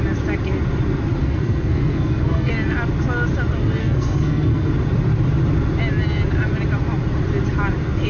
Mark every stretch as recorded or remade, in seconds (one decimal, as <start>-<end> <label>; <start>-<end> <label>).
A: 0.0-1.2 recorded; 1.2-2.5 remade; 2.5-3.8 recorded; 3.8-4.7 remade; 4.7-8.1 recorded